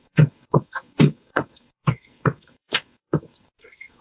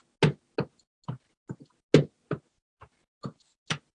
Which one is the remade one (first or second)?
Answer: first